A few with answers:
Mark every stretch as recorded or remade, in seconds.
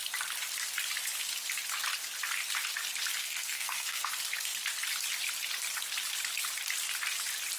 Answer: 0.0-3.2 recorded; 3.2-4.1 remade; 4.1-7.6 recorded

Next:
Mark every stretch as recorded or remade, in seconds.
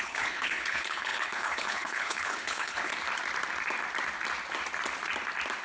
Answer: 0.0-2.9 remade; 2.9-5.6 recorded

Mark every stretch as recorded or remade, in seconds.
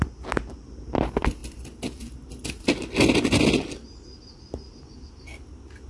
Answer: 0.0-5.9 recorded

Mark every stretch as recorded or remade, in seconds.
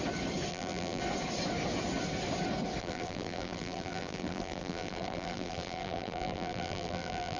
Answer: 0.0-0.5 recorded; 0.5-1.0 remade; 1.0-2.8 recorded; 2.8-7.4 remade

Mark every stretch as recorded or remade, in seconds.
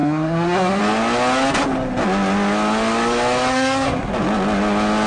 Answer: 0.0-0.8 remade; 0.8-3.5 recorded; 3.5-4.1 remade; 4.1-5.1 recorded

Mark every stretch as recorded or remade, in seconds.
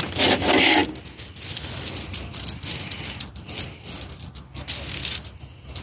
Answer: 0.0-5.8 recorded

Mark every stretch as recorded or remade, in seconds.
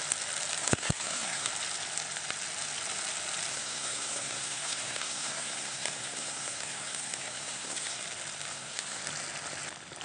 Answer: 0.0-0.6 recorded; 0.6-1.5 remade; 1.5-3.5 recorded; 3.5-8.0 remade; 8.0-8.5 recorded; 8.5-9.0 remade; 9.0-10.0 recorded